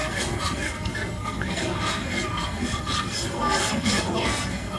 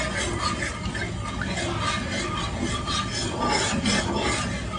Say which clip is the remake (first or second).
first